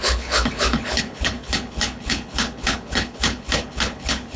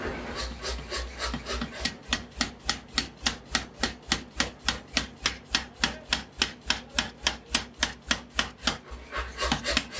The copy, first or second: first